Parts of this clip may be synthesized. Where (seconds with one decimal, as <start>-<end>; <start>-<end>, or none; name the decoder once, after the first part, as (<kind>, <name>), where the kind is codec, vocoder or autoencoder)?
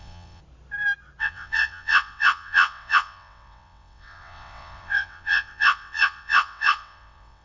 0.0-0.4 (vocoder, WaveNeXt); 1.2-7.4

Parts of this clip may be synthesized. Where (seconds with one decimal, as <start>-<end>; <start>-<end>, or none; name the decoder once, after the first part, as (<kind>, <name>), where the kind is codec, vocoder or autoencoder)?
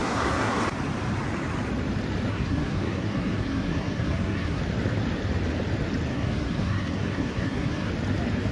0.0-0.6 (codec, SNAC); 2.3-4.6; 6.1-7.9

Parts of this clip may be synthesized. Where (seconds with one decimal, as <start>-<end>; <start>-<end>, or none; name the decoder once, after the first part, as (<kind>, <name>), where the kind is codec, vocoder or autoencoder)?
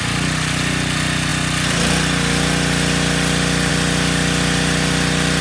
none